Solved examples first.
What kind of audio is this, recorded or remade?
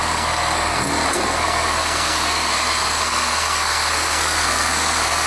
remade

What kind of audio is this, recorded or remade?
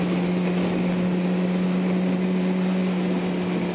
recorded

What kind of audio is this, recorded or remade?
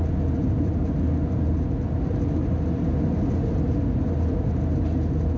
recorded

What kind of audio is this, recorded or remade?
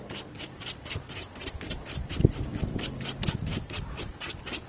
recorded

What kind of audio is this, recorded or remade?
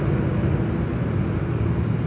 recorded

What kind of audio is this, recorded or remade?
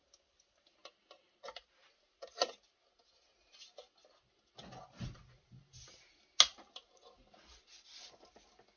recorded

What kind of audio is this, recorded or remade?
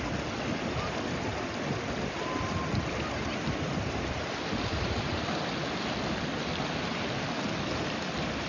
recorded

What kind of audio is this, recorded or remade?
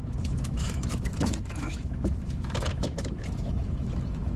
remade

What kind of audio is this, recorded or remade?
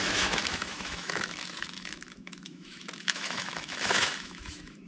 remade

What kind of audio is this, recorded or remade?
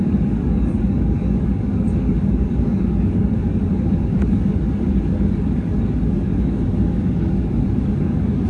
remade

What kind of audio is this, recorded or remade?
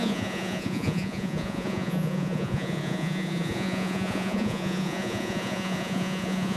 remade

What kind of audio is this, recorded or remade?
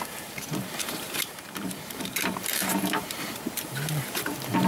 remade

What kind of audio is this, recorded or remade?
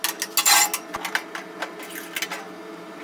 recorded